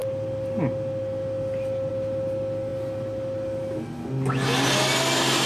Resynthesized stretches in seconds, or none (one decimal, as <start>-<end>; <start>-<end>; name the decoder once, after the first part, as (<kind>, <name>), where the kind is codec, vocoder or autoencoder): none